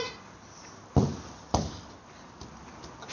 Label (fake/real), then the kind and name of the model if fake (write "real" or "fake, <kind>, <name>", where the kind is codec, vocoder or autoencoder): real